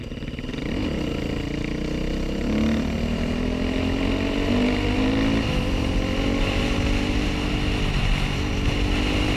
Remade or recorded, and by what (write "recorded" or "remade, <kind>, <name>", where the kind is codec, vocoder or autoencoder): recorded